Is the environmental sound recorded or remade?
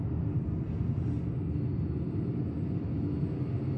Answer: recorded